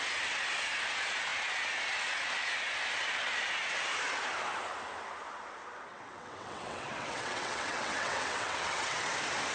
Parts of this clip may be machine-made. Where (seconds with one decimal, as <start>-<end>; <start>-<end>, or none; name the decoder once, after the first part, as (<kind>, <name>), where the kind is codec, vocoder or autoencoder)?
5.9-9.1 (vocoder, WaveNeXt)